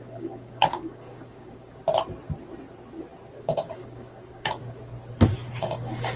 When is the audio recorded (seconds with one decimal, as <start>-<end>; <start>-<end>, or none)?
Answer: 1.8-3.4; 4.6-5.6